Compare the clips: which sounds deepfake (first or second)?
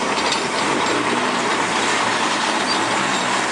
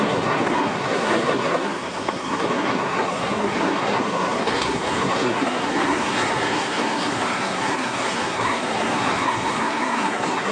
second